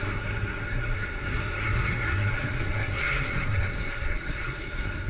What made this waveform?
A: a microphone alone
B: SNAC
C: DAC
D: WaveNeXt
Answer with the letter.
B